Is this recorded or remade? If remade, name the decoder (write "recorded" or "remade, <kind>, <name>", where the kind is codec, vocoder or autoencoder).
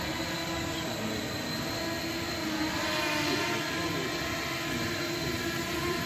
remade, vocoder, BigVGAN v2